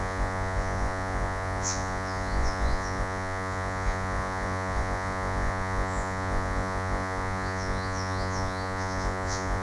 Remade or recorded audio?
remade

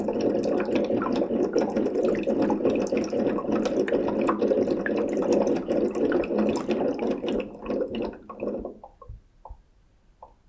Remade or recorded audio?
recorded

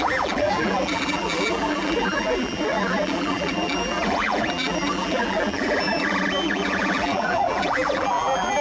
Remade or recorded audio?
remade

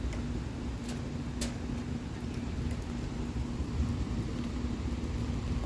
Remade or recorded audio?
recorded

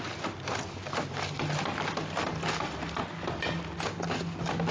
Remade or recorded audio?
recorded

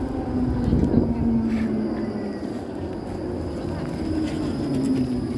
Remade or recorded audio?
recorded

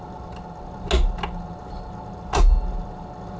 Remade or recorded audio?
recorded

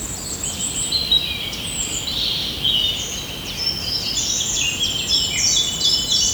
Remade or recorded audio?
recorded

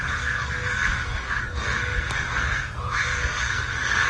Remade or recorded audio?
remade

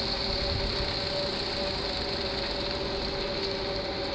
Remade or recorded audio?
recorded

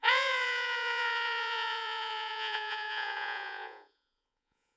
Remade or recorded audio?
remade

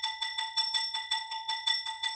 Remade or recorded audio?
remade